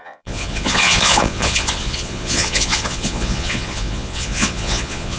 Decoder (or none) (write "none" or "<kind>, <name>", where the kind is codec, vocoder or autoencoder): vocoder, Vocos